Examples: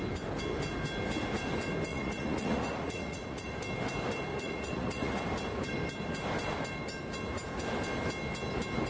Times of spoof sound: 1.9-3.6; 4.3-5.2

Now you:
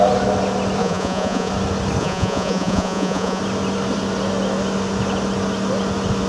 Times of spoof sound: 0.8-1.5; 2.0-3.4

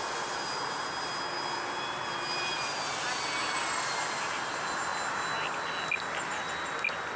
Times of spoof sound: none

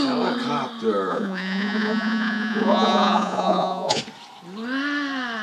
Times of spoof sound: 1.1-4.0